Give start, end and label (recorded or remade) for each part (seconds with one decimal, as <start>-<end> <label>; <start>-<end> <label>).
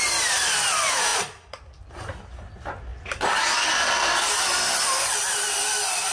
0.0-2.9 recorded; 2.9-6.1 remade